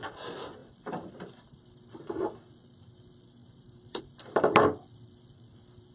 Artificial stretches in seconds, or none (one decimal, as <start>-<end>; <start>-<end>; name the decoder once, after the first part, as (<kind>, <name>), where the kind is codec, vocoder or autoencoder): 0.6-1.5 (vocoder, BigVGAN v2); 3.4-4.0